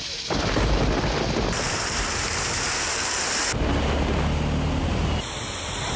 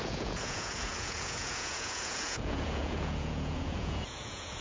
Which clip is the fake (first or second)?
second